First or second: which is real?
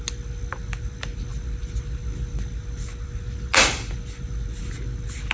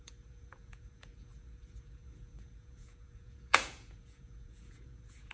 first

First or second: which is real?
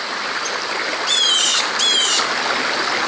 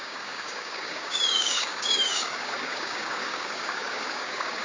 first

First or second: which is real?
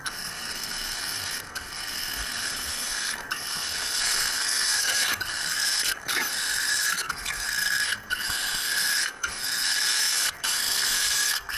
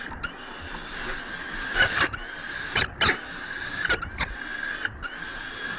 second